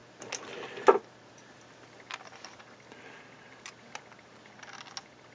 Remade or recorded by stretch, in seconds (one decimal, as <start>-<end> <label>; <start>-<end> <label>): 0.0-5.3 recorded